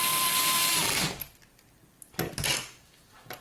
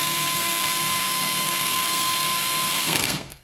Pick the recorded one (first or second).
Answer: first